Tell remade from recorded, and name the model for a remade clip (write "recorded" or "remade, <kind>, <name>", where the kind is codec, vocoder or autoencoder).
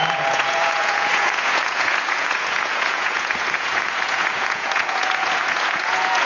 remade, vocoder, Vocos